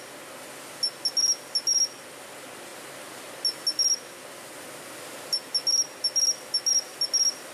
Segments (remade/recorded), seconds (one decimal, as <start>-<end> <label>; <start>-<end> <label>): 0.0-7.5 recorded

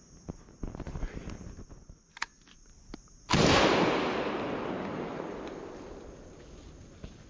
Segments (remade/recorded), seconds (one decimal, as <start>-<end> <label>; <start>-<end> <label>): 0.0-7.3 recorded

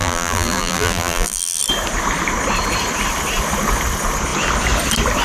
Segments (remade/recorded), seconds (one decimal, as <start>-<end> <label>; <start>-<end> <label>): 0.0-1.6 remade; 1.6-5.2 recorded

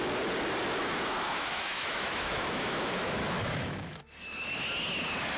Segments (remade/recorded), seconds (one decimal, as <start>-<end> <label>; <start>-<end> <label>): 0.0-0.8 recorded; 0.8-4.0 remade; 4.0-5.4 recorded

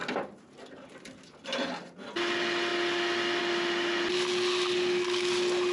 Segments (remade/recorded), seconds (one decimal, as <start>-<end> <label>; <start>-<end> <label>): 0.0-5.7 recorded